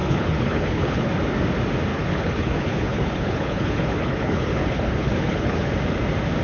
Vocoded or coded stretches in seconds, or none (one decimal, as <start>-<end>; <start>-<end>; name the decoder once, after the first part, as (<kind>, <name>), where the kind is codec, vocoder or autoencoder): 0.0-1.1 (codec, HILCodec); 1.9-5.7